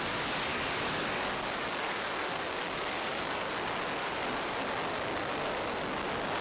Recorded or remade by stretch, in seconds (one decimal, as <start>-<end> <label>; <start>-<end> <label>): 0.0-0.5 recorded; 0.5-3.5 remade; 3.5-4.0 recorded; 4.0-4.6 remade; 4.6-6.4 recorded